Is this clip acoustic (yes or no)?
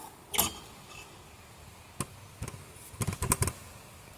yes